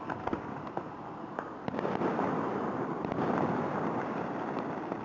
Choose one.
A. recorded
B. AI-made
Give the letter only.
B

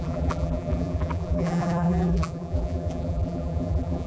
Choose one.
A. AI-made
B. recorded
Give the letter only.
A